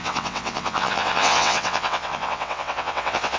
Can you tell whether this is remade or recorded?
remade